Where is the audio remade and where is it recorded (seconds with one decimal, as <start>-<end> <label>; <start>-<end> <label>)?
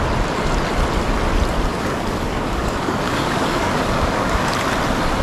0.0-1.7 recorded; 1.7-4.5 remade; 4.5-5.2 recorded